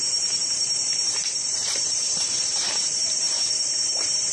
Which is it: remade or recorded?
remade